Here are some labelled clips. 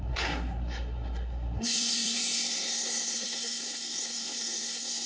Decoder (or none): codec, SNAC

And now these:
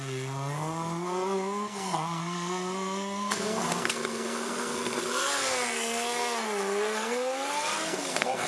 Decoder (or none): codec, SNAC